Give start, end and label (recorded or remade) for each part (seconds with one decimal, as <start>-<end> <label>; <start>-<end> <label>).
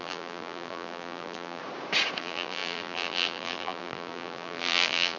0.0-1.6 remade; 1.6-2.2 recorded; 2.2-5.2 remade